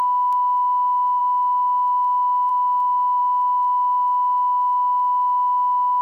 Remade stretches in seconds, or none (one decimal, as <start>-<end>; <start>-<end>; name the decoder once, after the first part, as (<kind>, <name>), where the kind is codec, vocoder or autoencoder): none

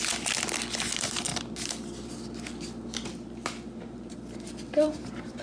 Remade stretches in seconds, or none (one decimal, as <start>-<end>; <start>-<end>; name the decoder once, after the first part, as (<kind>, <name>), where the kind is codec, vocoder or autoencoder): none

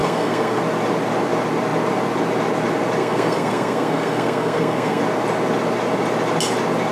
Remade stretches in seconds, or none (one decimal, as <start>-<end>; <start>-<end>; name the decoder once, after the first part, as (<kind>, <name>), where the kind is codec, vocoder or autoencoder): 0.0-0.6 (codec, SNAC); 3.0-5.0

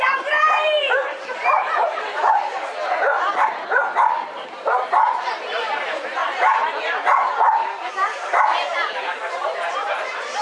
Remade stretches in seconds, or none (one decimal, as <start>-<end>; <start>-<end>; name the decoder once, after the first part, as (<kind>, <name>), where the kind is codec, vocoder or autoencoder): 0.0-10.4 (vocoder, BigVGAN v2)